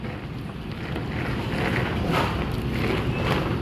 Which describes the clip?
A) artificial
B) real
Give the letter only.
B